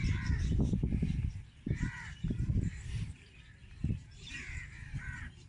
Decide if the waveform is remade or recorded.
remade